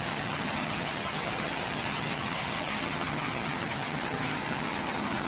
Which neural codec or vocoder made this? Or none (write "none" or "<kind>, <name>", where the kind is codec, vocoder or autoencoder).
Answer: vocoder, HiFi-GAN